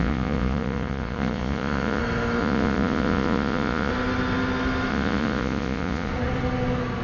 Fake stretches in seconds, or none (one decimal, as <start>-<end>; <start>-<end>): 0.0-2.0; 2.4-3.9; 4.9-6.1

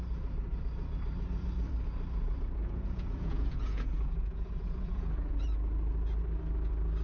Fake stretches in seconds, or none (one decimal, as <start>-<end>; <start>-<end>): 2.6-5.4